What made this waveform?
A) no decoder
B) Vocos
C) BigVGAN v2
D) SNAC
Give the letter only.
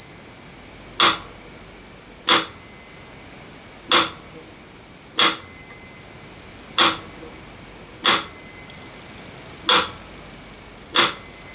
A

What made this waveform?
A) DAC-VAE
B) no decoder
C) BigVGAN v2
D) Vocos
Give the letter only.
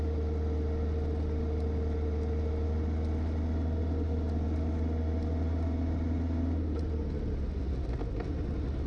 B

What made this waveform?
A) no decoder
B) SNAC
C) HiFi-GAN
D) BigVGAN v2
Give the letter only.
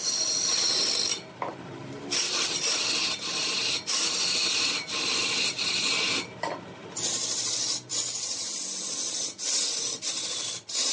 D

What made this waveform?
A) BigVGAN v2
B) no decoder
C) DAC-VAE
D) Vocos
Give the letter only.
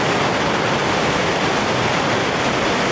B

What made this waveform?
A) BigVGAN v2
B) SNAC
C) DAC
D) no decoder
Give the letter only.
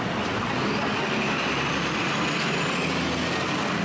D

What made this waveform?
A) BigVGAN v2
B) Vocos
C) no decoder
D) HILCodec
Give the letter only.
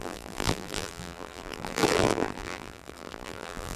A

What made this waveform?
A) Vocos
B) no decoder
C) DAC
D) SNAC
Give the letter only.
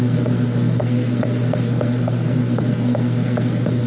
D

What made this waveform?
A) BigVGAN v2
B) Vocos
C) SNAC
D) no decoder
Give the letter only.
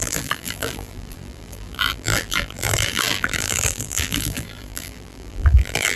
A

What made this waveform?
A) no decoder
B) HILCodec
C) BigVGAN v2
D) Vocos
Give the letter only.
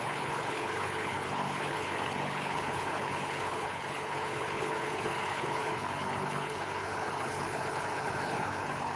B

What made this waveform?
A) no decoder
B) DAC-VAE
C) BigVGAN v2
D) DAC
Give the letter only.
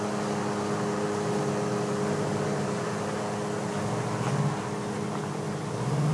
A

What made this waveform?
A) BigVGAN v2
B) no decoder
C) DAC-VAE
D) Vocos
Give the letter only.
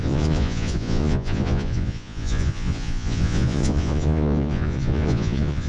D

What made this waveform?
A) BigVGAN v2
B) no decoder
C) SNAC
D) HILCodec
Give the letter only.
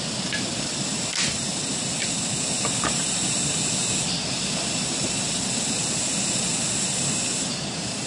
B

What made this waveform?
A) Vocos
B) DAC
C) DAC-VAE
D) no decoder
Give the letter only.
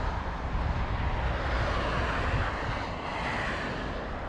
D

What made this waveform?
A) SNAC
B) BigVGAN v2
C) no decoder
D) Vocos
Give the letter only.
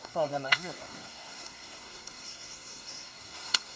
A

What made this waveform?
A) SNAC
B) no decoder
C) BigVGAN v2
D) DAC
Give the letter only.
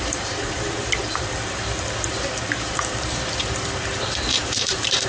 C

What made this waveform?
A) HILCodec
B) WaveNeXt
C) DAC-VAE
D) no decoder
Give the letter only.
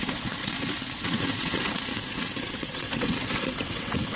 B